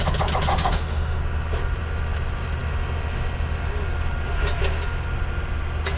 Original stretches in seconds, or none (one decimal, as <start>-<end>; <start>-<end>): 0.0-0.5; 1.2-6.0